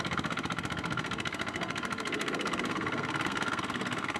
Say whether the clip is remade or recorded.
remade